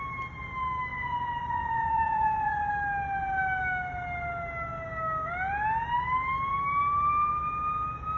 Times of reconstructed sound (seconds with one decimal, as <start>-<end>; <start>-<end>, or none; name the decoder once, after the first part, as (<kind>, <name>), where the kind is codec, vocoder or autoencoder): 0.9-2.7 (vocoder, Vocos)

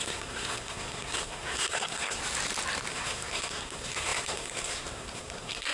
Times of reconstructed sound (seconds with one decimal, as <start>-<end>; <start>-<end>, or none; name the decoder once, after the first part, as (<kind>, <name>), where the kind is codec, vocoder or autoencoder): 0.0-2.2 (codec, SNAC); 2.9-5.7

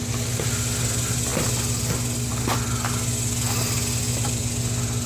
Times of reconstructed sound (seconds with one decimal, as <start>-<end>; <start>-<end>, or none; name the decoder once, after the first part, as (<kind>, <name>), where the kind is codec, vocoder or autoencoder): none

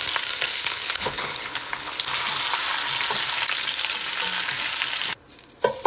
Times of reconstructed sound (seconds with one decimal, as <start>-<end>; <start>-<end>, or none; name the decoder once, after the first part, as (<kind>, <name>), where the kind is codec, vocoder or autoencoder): 0.5-1.9 (codec, HILCodec)

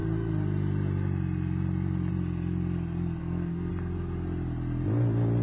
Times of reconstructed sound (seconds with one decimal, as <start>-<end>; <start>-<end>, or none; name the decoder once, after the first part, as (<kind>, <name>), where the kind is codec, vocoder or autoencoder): 3.2-3.7 (codec, SNAC)

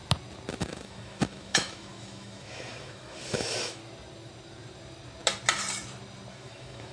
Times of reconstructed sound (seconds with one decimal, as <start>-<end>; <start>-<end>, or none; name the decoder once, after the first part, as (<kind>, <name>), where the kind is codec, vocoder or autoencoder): 0.5-3.8 (autoencoder, DAC-VAE); 6.3-6.9

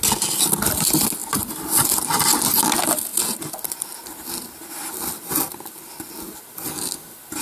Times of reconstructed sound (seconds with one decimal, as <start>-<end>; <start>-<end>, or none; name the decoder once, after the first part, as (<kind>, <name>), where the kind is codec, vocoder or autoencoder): none

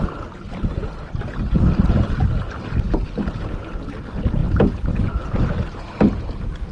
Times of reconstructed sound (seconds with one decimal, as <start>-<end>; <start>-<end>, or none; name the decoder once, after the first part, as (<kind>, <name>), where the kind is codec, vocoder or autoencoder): 4.4-5.4 (vocoder, BigVGAN v2)